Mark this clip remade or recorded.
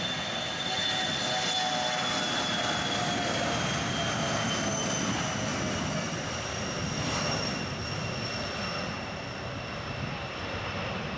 recorded